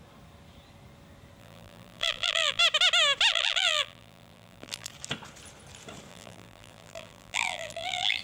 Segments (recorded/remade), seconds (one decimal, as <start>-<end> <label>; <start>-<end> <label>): 0.0-1.4 recorded; 1.4-2.6 remade; 2.6-3.3 recorded; 3.3-4.9 remade; 4.9-6.1 recorded; 6.1-8.2 remade